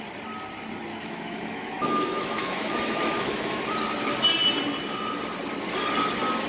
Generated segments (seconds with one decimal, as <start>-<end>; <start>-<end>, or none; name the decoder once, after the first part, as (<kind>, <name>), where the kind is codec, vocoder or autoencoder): 0.9-3.6 (autoencoder, DAC-VAE)